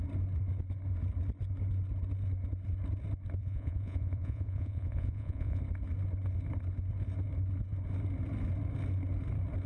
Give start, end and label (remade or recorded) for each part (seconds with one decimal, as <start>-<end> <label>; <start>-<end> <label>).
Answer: 0.0-3.4 recorded; 3.4-5.6 remade; 5.6-9.7 recorded